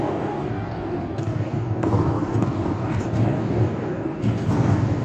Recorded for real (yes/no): no